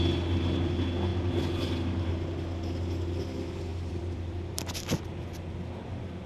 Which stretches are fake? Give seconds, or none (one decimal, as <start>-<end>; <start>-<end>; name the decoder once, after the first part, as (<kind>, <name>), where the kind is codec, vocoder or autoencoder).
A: 3.7-4.7 (vocoder, BigVGAN v2)